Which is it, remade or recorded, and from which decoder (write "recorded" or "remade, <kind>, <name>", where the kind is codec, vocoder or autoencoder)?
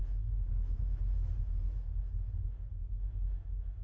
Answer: recorded